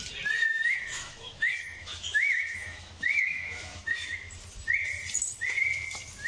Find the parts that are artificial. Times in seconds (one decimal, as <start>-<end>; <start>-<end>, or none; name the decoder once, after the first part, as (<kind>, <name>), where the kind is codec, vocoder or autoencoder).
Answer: 0.5-4.3 (autoencoder, DAC-VAE)